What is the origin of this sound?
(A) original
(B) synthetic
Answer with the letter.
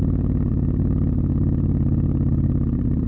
B